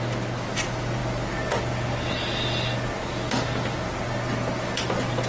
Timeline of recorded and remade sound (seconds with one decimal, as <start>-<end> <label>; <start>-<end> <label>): 0.0-5.3 recorded